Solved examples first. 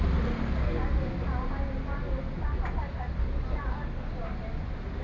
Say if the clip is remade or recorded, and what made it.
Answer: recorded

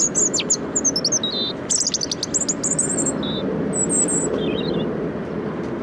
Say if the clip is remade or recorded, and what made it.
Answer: recorded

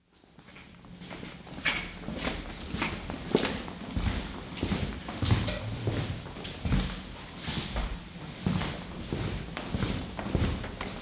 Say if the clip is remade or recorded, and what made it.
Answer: recorded